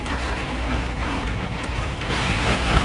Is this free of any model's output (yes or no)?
no